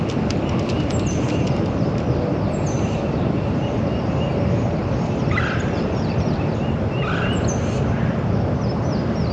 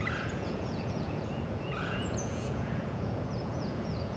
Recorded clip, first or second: first